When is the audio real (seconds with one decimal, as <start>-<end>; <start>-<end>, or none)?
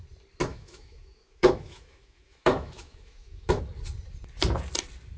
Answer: 0.0-0.5; 3.6-5.2